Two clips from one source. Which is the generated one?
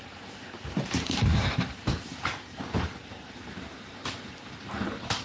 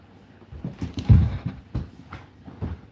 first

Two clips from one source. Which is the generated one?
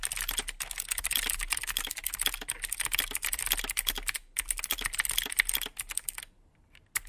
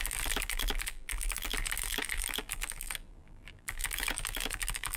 second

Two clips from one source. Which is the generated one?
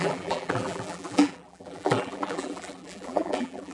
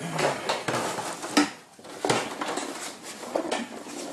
first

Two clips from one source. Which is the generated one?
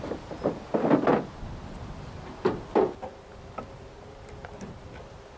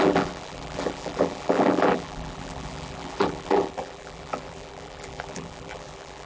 second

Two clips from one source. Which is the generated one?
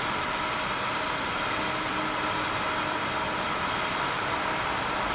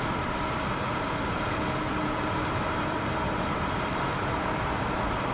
second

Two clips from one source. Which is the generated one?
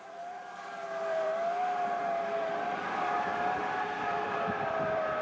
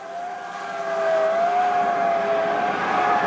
first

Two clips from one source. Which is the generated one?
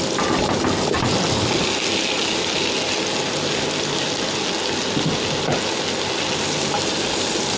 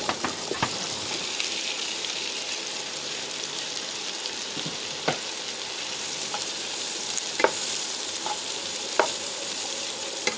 second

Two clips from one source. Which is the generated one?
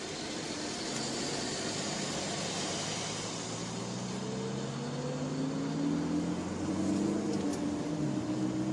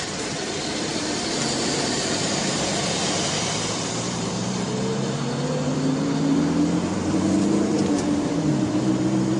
second